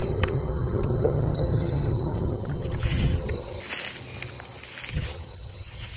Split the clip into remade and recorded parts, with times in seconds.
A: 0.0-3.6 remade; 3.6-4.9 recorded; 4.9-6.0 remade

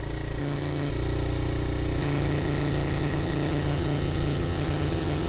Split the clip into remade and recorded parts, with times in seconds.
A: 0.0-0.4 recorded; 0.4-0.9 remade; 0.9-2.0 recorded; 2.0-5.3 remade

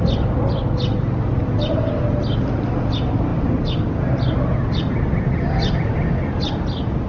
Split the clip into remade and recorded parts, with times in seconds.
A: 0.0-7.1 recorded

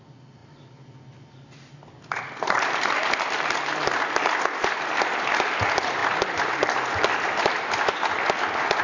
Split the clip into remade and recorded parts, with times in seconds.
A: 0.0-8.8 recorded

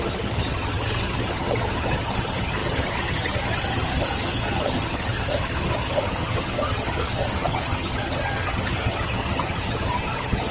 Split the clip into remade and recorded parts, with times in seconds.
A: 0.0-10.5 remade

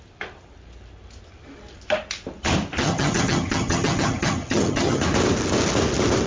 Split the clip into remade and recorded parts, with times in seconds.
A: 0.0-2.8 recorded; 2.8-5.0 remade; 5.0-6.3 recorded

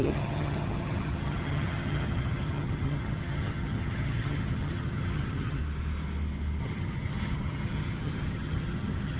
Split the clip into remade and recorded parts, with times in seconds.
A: 0.0-5.6 remade; 5.6-6.6 recorded; 6.6-9.2 remade